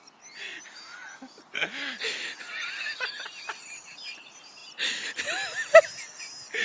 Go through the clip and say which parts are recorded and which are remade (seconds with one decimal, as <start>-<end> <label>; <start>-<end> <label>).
0.0-6.6 recorded